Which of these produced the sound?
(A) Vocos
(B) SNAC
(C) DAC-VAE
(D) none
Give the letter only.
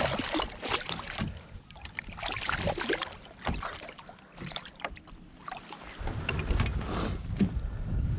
D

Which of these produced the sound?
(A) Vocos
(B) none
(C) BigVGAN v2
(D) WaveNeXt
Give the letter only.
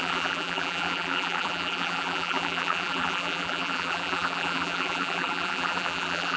C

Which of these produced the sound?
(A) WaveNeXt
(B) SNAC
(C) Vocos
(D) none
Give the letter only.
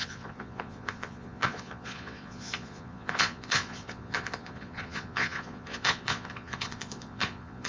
C